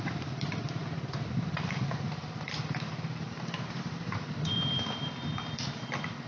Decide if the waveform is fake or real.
fake